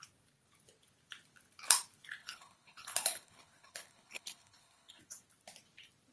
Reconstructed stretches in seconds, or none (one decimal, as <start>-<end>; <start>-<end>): 2.2-5.0